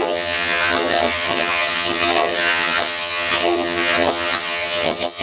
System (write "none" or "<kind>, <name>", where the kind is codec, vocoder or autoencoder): vocoder, HiFi-GAN